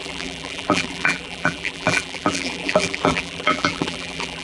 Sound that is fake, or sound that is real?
fake